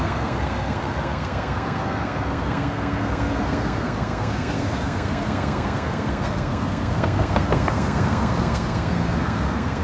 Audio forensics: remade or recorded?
remade